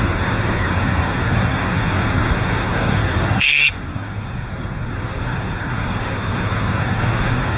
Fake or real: fake